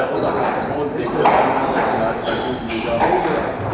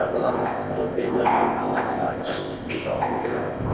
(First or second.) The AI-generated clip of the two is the second